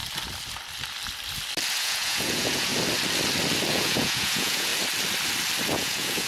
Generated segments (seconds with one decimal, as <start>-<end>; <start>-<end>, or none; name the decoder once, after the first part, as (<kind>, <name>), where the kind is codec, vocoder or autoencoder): 1.8-2.7 (vocoder, Vocos); 3.7-4.7; 5.7-6.3